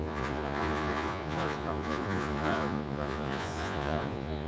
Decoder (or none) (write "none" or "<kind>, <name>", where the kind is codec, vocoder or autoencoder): vocoder, Vocos